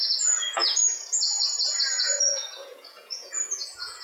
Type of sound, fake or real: fake